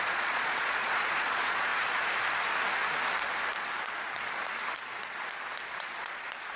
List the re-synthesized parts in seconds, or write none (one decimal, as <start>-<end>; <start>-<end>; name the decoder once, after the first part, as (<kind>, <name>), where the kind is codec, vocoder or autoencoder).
0.0-1.7 (vocoder, Vocos); 5.7-6.6